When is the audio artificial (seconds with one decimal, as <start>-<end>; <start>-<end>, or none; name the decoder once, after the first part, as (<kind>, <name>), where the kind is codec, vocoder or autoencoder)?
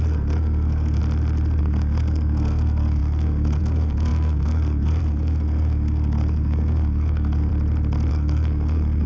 0.0-1.0 (codec, SNAC); 1.6-7.5; 8.1-9.1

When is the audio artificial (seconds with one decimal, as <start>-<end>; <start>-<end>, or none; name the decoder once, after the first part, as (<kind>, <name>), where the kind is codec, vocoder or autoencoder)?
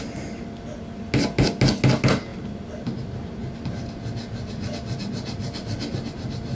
none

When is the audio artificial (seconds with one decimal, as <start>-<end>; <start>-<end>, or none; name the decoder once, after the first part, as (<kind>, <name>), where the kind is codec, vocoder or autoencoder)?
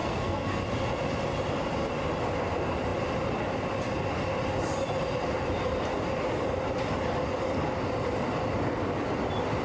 0.0-0.6 (codec, SNAC)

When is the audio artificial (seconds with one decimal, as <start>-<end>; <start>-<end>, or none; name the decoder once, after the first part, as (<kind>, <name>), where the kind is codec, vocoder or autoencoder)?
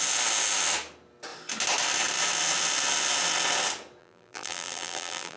4.0-5.4 (vocoder, BigVGAN v2)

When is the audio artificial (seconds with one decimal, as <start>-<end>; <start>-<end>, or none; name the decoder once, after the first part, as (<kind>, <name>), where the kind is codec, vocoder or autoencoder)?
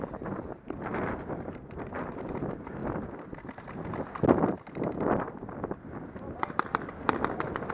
0.0-2.8 (vocoder, BigVGAN v2)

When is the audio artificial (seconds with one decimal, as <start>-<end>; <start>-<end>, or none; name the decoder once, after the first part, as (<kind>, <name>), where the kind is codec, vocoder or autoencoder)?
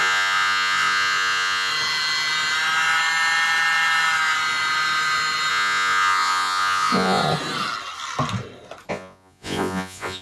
0.0-1.7 (vocoder, Vocos); 5.5-7.2; 8.9-10.2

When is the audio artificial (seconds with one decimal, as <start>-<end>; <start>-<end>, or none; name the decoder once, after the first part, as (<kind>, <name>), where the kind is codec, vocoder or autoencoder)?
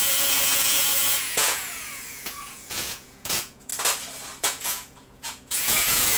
0.0-3.7 (vocoder, Vocos); 4.4-6.2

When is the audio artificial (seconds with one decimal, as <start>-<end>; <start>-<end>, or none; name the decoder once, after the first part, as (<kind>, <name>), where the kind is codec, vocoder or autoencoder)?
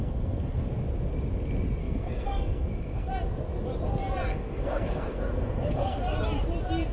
0.0-0.7 (codec, SNAC); 1.8-3.1; 4.3-6.0